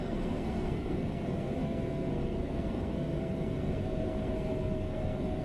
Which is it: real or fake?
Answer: fake